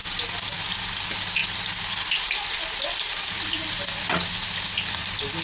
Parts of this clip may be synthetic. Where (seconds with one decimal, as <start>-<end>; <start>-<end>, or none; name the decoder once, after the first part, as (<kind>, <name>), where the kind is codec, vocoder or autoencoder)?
none